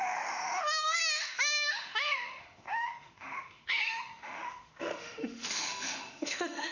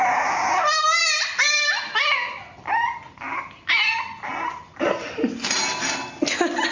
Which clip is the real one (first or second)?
second